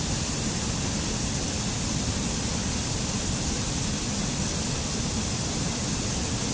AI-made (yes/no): no